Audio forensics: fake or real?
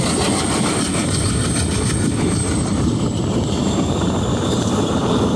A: real